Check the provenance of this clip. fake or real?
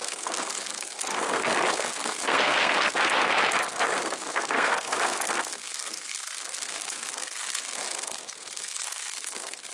fake